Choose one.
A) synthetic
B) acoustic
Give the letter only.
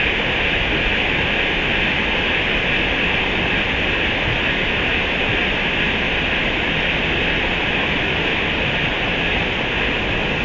B